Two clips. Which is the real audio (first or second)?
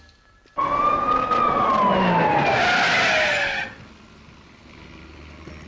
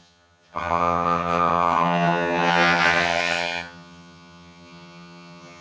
first